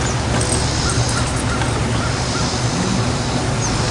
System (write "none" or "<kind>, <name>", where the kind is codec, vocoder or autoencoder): none